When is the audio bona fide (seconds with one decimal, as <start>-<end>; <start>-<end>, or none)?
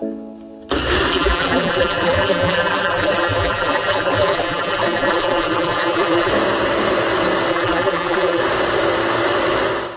0.0-1.1; 6.3-7.5; 8.4-10.0